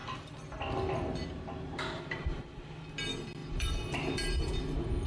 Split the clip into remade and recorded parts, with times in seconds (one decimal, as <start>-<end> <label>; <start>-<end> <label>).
0.0-2.8 remade; 2.8-3.4 recorded; 3.4-4.5 remade; 4.5-5.1 recorded